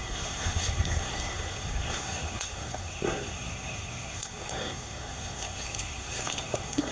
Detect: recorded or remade remade